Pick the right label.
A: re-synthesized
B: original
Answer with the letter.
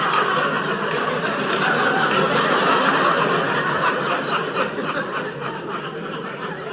B